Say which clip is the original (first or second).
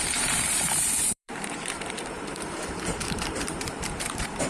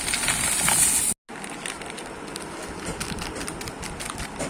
second